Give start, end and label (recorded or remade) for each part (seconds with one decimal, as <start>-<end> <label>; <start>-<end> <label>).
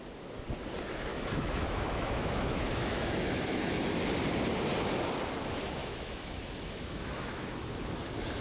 0.0-1.1 recorded; 1.1-4.1 remade; 4.1-5.8 recorded; 5.8-7.7 remade; 7.7-8.4 recorded